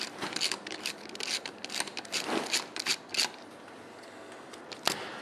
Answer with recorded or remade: recorded